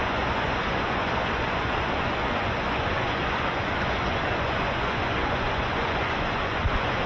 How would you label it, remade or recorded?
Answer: remade